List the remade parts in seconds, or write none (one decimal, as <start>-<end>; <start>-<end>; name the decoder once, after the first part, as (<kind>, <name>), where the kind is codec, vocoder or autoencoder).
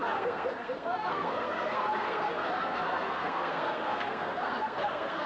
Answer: 0.0-5.3 (codec, SNAC)